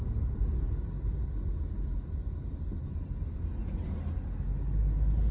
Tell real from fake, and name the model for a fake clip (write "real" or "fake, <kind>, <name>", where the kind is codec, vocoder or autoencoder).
real